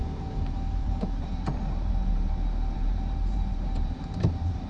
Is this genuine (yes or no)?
no